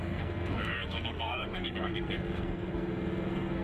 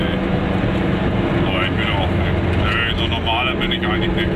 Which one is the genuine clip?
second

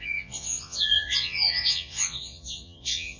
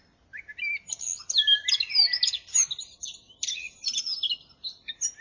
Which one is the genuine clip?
second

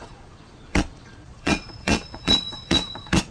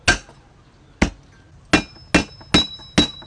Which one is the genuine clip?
second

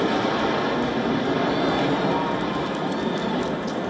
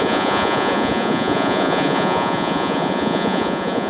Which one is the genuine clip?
first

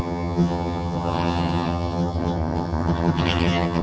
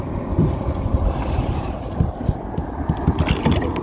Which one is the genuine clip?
second